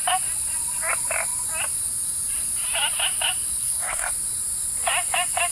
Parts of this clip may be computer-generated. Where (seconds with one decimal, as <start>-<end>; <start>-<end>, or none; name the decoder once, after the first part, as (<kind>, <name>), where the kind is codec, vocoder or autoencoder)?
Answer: 3.6-4.1 (codec, SNAC)